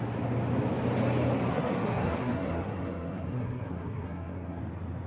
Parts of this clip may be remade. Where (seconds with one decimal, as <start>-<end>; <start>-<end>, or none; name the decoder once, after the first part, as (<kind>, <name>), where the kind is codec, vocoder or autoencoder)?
1.5-4.6 (codec, SNAC)